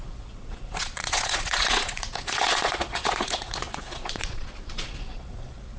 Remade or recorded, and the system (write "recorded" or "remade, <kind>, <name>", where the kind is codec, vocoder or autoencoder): remade, vocoder, Vocos